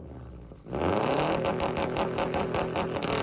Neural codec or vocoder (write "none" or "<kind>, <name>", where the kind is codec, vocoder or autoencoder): none